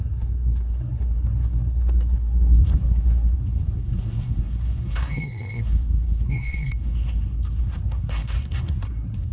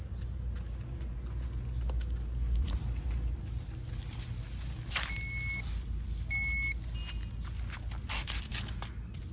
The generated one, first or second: first